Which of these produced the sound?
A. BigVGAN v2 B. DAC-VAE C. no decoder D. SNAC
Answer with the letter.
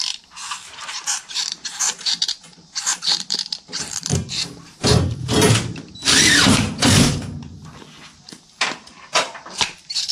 A